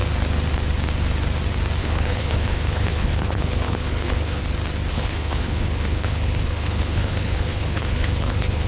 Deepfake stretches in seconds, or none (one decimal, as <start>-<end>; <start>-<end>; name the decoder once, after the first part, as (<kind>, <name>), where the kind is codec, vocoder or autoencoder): 1.8-4.4 (codec, HILCodec); 4.9-8.7